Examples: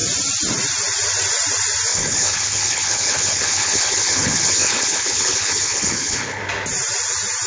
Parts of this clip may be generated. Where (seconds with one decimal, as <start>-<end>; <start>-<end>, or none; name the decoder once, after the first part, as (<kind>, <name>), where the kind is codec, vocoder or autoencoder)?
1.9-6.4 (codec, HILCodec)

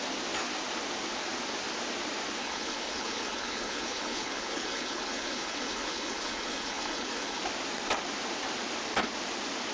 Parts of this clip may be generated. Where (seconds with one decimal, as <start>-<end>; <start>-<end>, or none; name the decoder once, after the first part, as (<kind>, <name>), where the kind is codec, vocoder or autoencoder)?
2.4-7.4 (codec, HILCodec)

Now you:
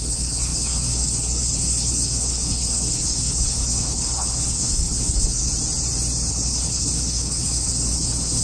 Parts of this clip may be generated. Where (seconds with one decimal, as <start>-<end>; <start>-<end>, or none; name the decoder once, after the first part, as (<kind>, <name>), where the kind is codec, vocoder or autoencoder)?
0.0-5.5 (codec, HILCodec); 6.3-8.4

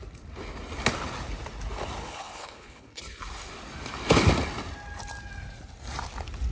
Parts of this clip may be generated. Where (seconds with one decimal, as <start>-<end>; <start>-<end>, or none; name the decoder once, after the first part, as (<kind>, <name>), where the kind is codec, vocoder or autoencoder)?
2.0-3.0 (codec, HILCodec)